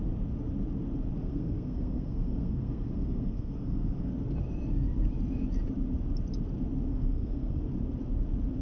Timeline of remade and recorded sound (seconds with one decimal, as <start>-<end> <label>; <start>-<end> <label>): 0.0-1.2 recorded; 1.2-4.1 remade; 4.1-6.9 recorded; 6.9-7.6 remade; 7.6-8.6 recorded